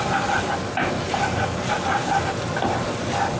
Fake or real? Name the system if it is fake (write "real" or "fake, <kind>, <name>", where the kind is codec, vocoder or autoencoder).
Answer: real